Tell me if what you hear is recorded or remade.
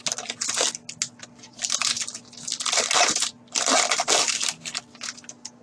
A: recorded